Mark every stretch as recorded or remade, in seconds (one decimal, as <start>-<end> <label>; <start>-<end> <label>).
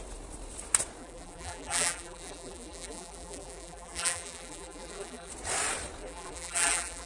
0.0-1.0 recorded; 1.0-5.3 remade; 5.3-6.0 recorded; 6.0-7.1 remade